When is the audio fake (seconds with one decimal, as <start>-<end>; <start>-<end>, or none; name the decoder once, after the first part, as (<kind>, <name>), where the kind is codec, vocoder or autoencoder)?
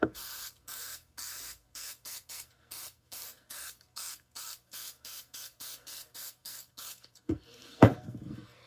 0.0-8.7 (codec, SNAC)